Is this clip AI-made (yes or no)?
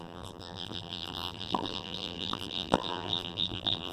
yes